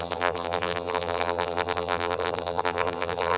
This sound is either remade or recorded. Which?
remade